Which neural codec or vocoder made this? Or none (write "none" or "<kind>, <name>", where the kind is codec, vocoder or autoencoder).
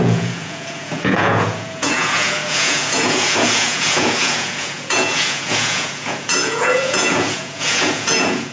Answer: vocoder, Vocos